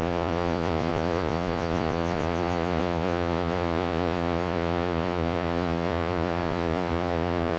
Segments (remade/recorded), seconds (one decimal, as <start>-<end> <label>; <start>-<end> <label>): 0.0-7.6 remade